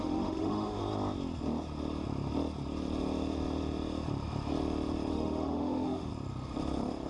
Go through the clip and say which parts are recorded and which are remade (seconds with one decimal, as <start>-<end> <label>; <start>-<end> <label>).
0.0-0.8 remade; 0.8-5.1 recorded; 5.1-6.1 remade; 6.1-7.1 recorded